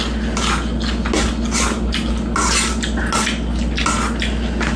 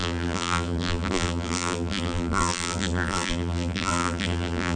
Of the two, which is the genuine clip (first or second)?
first